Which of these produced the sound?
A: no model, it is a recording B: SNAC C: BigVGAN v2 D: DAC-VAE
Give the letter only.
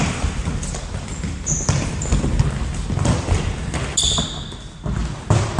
A